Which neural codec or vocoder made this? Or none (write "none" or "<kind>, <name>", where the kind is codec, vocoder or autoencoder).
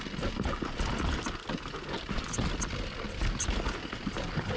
none